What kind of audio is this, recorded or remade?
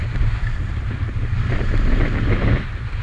recorded